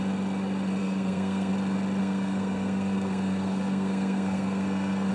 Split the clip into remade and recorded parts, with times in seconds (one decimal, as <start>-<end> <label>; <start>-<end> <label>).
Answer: 0.0-0.8 recorded; 0.8-1.5 remade; 1.5-2.0 recorded; 2.0-5.1 remade